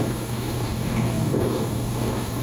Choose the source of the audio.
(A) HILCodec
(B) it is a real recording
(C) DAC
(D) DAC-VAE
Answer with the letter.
C